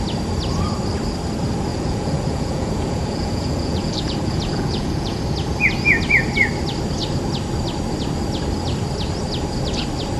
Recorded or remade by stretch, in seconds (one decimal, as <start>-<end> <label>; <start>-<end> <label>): 0.0-1.7 recorded; 1.7-5.2 remade; 5.2-10.2 recorded